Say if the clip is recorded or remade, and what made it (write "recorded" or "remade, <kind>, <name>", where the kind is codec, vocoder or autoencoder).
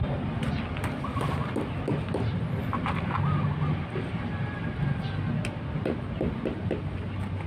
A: recorded